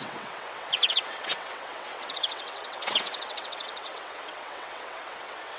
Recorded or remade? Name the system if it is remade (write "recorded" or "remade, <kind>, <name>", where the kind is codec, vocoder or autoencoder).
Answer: remade, vocoder, WaveNeXt